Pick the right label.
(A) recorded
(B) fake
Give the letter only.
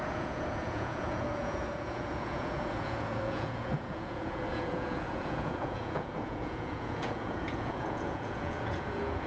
B